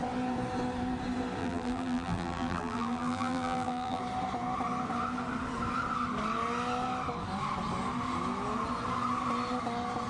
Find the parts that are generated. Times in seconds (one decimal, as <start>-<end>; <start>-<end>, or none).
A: 1.4-4.0